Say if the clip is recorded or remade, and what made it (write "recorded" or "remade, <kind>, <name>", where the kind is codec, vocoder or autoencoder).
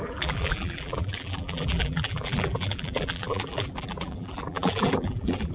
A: remade, vocoder, BigVGAN v2